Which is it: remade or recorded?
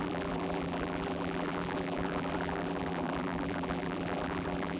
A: remade